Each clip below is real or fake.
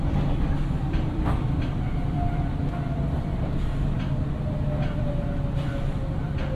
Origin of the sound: fake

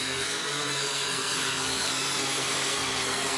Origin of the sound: fake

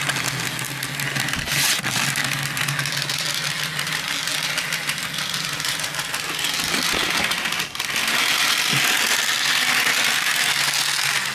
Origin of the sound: real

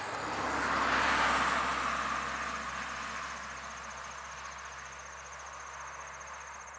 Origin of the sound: real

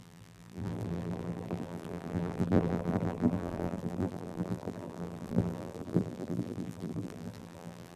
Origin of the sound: fake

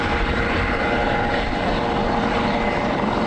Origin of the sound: real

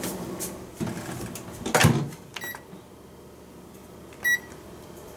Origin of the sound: real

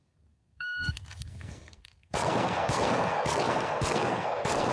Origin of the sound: fake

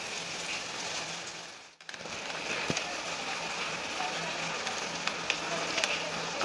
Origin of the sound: real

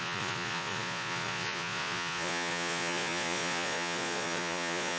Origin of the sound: fake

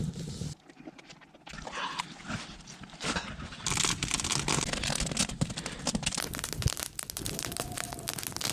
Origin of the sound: real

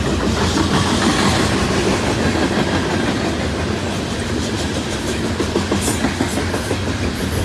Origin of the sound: real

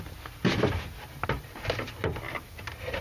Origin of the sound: real